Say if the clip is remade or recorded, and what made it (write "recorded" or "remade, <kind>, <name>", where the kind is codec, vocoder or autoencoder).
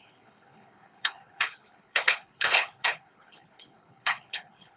remade, codec, HILCodec